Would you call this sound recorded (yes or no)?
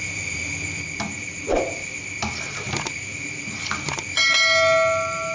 yes